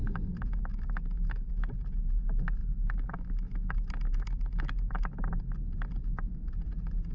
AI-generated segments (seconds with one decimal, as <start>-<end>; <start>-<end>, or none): 0.0-1.5; 2.6-5.0; 6.0-6.5

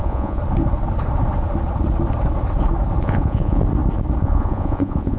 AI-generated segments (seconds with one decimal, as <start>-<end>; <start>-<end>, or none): 0.0-0.4; 3.0-3.6; 4.2-5.2

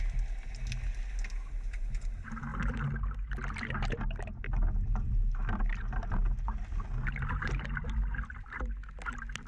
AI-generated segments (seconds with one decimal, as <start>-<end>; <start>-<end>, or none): none

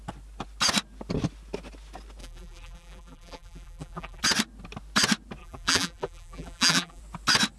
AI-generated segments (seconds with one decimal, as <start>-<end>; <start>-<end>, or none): 2.2-4.2; 5.4-7.0

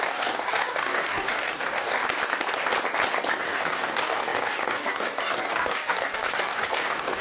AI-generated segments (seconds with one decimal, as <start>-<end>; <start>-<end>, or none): 0.0-2.0; 3.3-7.2

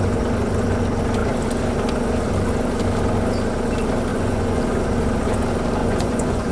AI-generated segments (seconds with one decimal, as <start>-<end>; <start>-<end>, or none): 4.1-4.6; 5.8-6.5

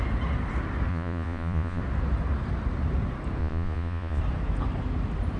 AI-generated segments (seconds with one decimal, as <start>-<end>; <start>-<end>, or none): 0.9-1.8; 3.4-4.2

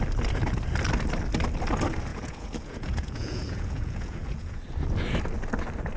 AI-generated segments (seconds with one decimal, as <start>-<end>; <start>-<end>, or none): 2.1-4.6